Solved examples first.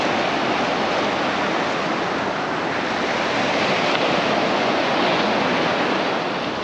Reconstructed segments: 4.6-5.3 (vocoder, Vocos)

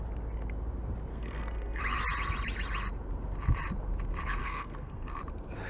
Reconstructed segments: 1.1-1.8 (codec, SNAC); 4.4-5.2

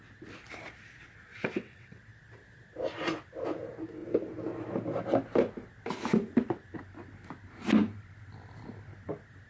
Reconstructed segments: 1.3-2.0 (vocoder, WaveNeXt)

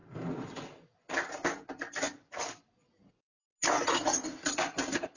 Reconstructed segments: none

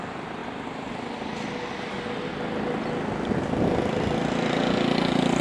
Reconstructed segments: none